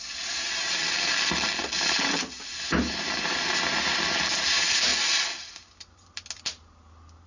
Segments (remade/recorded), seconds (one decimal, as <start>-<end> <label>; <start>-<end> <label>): 0.0-7.3 recorded